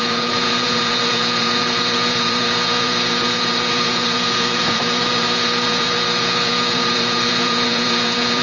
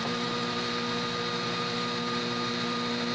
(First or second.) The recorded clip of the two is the second